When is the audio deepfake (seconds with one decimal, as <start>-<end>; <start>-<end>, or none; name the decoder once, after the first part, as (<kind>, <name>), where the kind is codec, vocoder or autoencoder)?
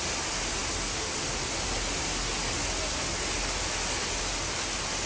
none